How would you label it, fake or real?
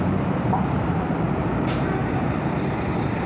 fake